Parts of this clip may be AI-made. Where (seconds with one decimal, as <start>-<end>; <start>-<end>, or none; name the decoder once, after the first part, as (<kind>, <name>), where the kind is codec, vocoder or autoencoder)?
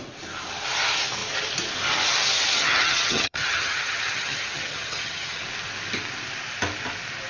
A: 2.6-5.4 (vocoder, HiFi-GAN)